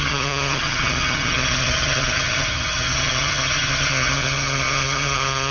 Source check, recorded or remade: remade